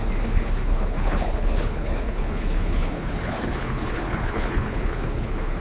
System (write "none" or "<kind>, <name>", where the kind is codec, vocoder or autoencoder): codec, HILCodec